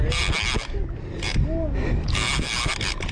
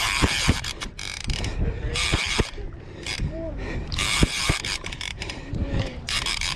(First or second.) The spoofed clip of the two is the second